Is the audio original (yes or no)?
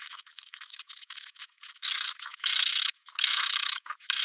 no